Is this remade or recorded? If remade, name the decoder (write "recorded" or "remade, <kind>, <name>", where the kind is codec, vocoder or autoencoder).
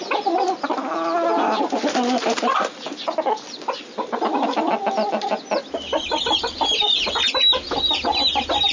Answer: recorded